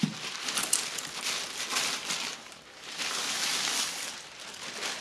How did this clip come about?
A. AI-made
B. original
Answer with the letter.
B